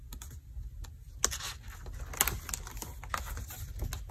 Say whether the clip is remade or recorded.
recorded